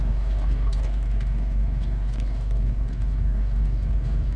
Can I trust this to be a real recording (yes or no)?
no